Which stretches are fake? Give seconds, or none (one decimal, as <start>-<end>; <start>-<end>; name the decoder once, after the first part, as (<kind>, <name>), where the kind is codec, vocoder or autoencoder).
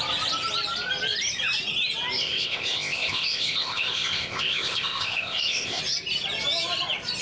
2.2-5.8 (codec, ZipCodec)